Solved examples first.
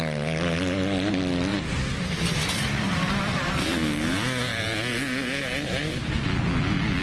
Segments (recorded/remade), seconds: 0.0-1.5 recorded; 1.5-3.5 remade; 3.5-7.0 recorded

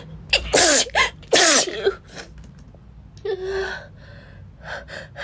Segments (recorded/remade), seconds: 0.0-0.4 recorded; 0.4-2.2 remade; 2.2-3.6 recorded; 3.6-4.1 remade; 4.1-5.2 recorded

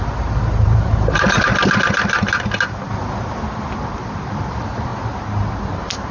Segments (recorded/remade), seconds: 0.0-1.5 remade; 1.5-4.5 recorded; 4.5-4.9 remade; 4.9-5.5 recorded; 5.5-6.1 remade

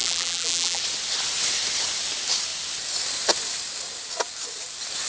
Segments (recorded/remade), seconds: 0.0-0.8 remade; 0.8-5.1 recorded